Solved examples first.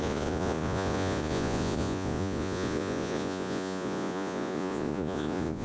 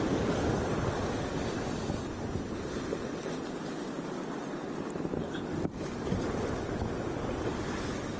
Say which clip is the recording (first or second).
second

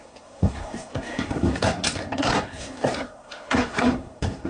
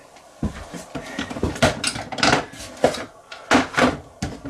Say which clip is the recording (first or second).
second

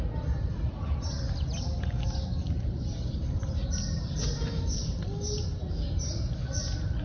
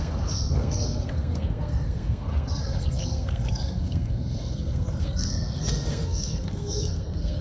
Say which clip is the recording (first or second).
first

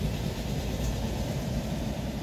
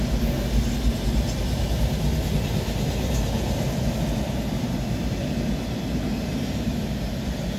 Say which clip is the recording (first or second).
second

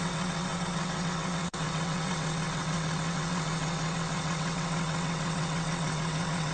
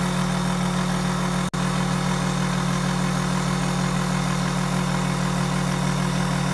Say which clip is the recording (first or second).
second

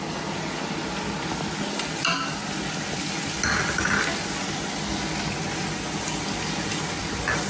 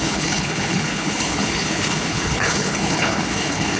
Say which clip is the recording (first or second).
first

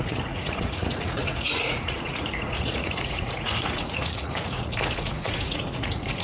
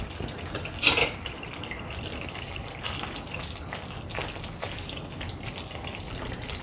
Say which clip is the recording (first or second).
second